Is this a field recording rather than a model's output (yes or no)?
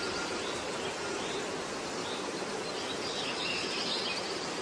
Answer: yes